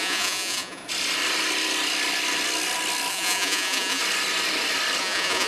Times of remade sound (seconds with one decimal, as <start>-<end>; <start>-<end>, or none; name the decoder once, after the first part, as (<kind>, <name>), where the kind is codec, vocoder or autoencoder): 0.0-0.8 (vocoder, Vocos); 3.1-4.0; 5.0-5.5